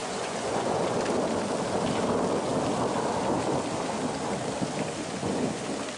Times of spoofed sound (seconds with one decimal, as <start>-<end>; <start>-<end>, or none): 0.0-1.0; 5.0-5.6

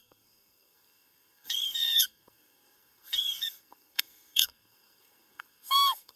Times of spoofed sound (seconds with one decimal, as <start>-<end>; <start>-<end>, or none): 0.0-6.2

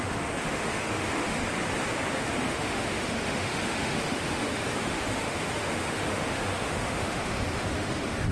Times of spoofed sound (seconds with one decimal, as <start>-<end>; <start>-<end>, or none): 0.0-1.4; 2.1-8.3